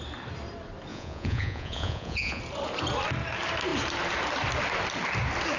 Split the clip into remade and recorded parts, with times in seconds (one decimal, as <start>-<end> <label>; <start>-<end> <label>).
0.0-0.9 recorded; 0.9-2.4 remade; 2.4-5.6 recorded